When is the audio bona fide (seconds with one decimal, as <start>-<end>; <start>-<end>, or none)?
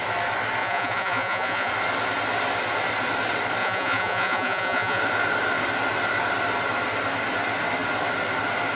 0.0-0.6; 1.7-3.6; 5.0-8.7